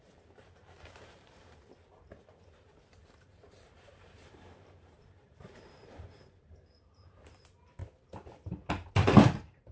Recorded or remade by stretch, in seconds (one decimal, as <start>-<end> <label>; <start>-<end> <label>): 0.0-7.8 remade; 7.8-8.9 recorded; 8.9-9.7 remade